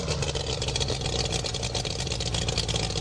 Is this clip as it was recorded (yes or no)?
no